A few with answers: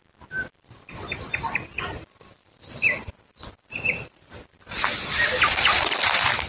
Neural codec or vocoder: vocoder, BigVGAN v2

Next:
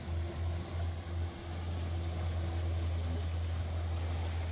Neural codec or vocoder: none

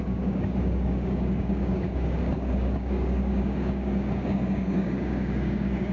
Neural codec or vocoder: codec, DAC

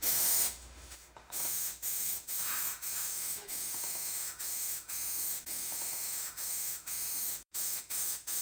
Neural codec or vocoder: autoencoder, DAC-VAE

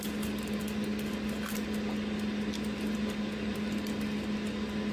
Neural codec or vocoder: none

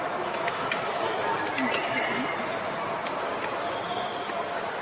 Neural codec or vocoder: none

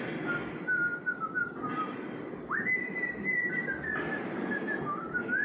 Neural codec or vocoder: none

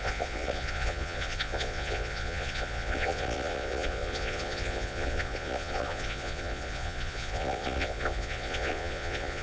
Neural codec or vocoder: vocoder, Vocos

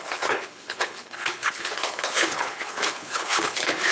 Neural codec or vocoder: codec, HILCodec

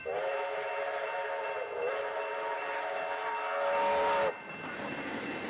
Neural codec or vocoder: none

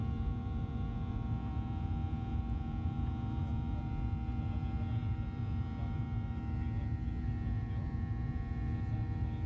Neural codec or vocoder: vocoder, Vocos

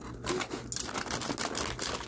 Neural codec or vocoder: none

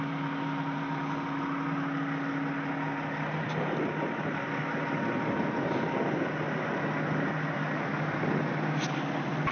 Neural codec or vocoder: none